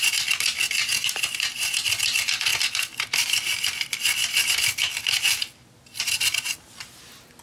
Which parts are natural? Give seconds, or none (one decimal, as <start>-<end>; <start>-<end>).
0.0-0.8; 1.6-7.4